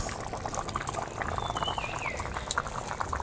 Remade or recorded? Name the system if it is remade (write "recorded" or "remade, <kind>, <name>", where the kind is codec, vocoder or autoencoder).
recorded